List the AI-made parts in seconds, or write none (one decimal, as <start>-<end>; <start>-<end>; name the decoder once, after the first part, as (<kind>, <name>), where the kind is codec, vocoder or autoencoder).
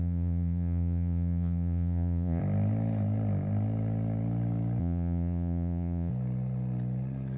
0.0-2.4 (vocoder, Vocos); 4.8-6.1